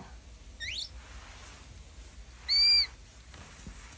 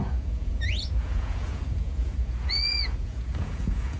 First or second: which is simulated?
second